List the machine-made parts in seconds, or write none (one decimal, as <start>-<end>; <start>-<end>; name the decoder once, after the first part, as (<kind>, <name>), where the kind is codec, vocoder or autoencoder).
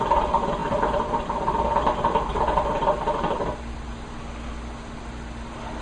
none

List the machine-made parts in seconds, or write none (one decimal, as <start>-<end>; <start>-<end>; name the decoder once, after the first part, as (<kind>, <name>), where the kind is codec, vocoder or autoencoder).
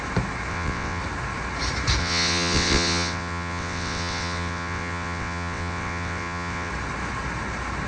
0.5-1.0 (vocoder, WaveNeXt); 2.0-6.7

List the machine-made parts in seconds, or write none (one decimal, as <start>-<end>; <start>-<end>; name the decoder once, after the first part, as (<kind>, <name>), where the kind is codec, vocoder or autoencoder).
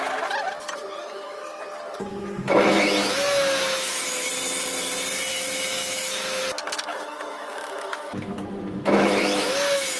1.0-1.6 (autoencoder, DAC-VAE); 2.1-4.3; 5.3-6.4; 6.9-10.0